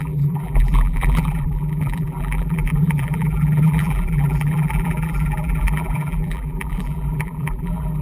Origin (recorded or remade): remade